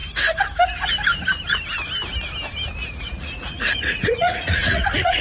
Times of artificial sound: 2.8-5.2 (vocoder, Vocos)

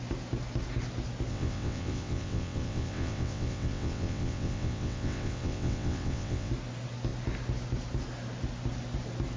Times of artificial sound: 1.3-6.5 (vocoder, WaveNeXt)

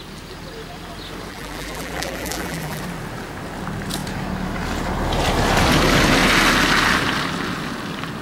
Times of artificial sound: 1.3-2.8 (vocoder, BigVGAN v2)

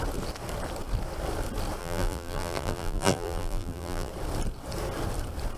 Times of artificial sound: 1.8-4.1 (vocoder, BigVGAN v2)

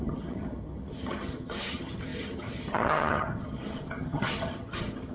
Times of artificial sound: 0.0-5.1 (vocoder, HiFi-GAN)